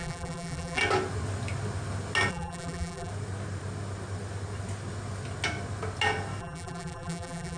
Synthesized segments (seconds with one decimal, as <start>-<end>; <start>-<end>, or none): 0.0-0.8; 2.3-3.1; 6.4-7.6